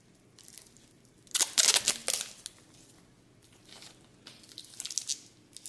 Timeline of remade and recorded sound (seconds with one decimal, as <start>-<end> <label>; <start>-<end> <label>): 0.0-5.7 recorded